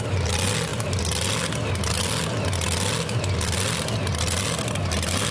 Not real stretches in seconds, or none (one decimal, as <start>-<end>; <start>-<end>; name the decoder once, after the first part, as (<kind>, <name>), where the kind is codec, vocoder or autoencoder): none

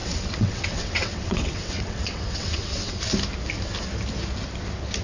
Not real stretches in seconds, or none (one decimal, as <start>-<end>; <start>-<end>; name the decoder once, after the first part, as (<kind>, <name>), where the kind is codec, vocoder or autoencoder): 0.0-3.0 (vocoder, WaveNeXt)

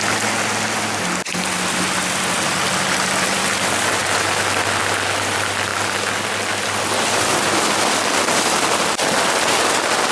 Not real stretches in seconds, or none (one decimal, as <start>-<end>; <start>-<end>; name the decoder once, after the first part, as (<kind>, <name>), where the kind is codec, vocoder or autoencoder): none

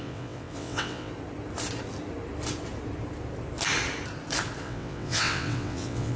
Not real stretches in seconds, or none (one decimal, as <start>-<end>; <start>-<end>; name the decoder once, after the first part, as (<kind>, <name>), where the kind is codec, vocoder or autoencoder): 0.0-1.1 (vocoder, WaveNeXt); 4.6-6.2

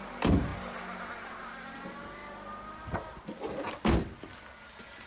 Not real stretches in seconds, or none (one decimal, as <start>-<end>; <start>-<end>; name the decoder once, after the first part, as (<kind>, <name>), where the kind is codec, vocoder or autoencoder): none

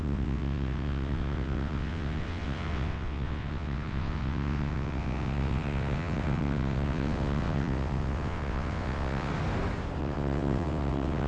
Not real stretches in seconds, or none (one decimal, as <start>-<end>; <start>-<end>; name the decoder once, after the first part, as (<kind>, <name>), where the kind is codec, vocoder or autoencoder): 0.0-9.3 (vocoder, WaveNeXt); 10.0-11.3

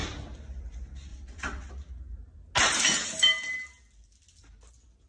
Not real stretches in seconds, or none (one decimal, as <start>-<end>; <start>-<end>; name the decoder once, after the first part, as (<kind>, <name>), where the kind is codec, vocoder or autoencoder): 1.1-1.7 (vocoder, WaveNeXt)

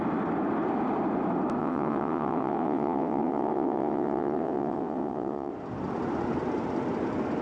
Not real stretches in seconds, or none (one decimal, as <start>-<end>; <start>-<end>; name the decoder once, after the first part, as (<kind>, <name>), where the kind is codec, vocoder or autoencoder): 1.6-5.5 (vocoder, WaveNeXt)